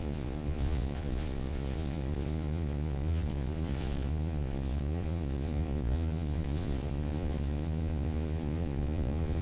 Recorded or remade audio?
remade